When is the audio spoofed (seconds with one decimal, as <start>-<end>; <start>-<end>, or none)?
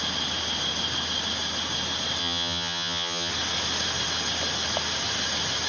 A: 2.2-3.3